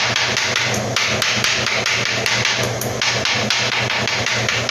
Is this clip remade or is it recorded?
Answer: recorded